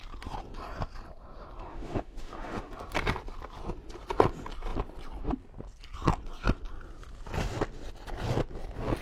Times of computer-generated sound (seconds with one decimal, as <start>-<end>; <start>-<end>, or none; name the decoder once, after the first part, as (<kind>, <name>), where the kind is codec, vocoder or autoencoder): 1.7-2.7 (autoencoder, DAC-VAE)

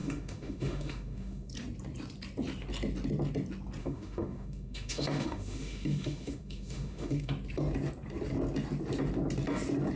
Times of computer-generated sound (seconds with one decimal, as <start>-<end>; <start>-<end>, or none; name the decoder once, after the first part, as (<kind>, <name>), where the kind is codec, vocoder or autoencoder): 0.0-1.5 (autoencoder, DAC-VAE); 3.8-7.3

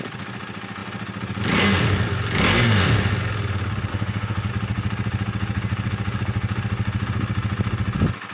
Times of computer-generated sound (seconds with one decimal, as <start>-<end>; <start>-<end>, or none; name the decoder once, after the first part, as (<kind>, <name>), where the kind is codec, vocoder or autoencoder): 3.9-4.5 (autoencoder, DAC-VAE)